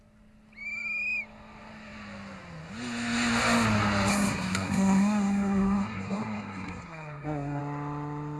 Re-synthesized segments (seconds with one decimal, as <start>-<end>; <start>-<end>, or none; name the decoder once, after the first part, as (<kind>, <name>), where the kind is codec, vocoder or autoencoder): 4.1-7.6 (codec, SNAC)